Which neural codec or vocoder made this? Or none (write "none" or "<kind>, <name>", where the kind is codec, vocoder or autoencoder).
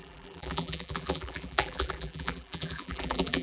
vocoder, BigVGAN v2